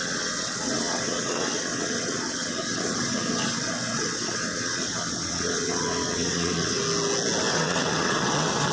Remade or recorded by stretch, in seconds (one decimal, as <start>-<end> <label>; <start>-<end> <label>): 0.0-6.8 remade; 6.8-7.5 recorded; 7.5-8.7 remade

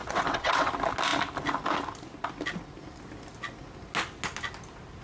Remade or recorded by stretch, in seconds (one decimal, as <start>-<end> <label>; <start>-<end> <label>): 0.0-0.7 remade; 0.7-5.0 recorded

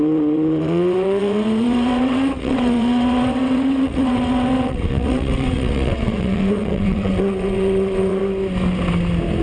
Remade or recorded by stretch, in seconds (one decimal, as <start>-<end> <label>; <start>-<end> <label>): 0.0-8.2 remade; 8.2-9.4 recorded

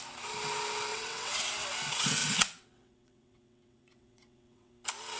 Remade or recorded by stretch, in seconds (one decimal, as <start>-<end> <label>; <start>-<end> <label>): 0.0-0.9 recorded; 0.9-1.4 remade; 1.4-2.2 recorded; 2.2-4.7 remade; 4.7-5.2 recorded

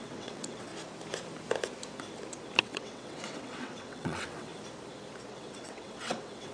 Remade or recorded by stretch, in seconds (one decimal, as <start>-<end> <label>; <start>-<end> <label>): 0.0-0.7 remade; 0.7-2.6 recorded; 2.6-4.5 remade; 4.5-5.3 recorded; 5.3-6.5 remade

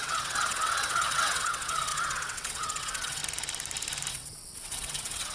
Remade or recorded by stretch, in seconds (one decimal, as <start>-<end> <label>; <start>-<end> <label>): 0.0-3.2 remade; 3.2-4.1 recorded; 4.1-5.3 remade

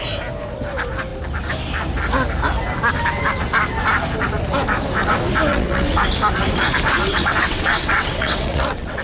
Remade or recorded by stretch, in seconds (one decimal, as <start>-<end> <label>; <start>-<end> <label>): 0.0-5.5 recorded; 5.5-6.0 remade; 6.0-7.1 recorded; 7.1-9.0 remade